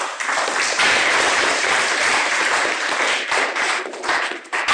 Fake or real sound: fake